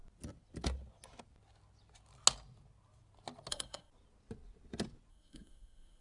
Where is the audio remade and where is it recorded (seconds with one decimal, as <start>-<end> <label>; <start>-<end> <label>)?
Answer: 0.0-3.5 recorded; 3.5-3.9 remade; 3.9-5.1 recorded; 5.1-6.0 remade